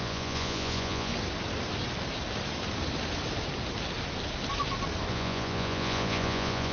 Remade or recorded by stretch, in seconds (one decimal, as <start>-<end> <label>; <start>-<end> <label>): 0.0-1.1 remade; 1.1-5.1 recorded; 5.1-6.7 remade